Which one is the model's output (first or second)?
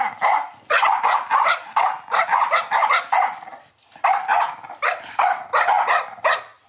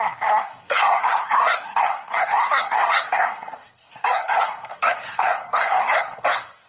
second